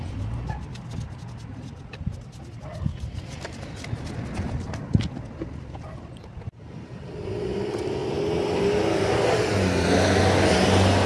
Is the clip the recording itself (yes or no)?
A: yes